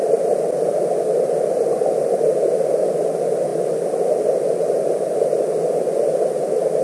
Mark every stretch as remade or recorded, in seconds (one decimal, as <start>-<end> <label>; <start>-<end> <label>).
0.0-6.8 recorded

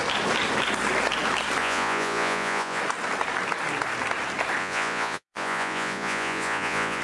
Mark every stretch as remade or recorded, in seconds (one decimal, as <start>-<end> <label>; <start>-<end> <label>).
0.0-1.6 recorded; 1.6-2.8 remade; 2.8-4.6 recorded; 4.6-7.0 remade

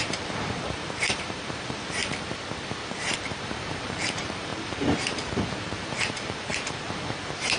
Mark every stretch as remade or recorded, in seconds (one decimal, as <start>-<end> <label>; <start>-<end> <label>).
0.0-7.6 remade

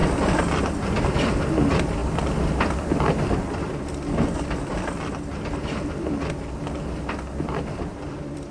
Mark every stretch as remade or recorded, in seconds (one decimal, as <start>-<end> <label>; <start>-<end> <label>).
0.0-8.5 remade

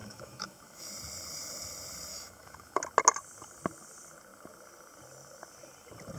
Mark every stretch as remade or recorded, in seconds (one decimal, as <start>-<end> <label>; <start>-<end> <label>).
0.0-0.9 remade; 0.9-2.1 recorded; 2.1-2.8 remade; 2.8-6.2 recorded

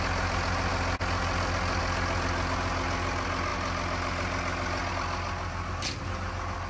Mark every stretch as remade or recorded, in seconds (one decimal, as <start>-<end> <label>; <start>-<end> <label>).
0.0-6.7 recorded